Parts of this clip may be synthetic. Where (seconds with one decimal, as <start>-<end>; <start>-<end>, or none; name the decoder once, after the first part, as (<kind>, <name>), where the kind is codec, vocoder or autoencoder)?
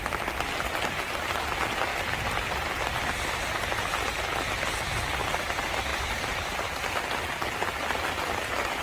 5.9-7.0 (vocoder, BigVGAN v2)